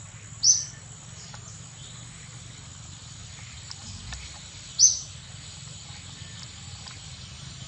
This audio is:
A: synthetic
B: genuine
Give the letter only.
B